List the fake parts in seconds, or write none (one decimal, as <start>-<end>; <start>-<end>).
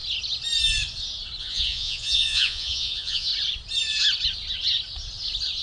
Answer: 1.4-3.3